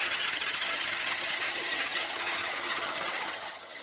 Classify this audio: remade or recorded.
remade